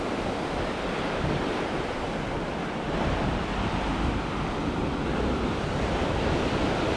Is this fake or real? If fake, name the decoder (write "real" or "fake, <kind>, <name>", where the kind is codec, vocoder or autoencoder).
real